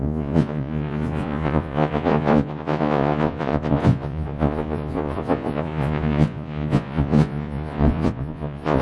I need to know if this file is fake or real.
fake